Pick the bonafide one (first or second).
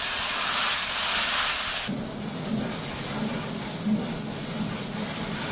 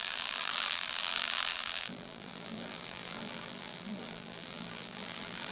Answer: first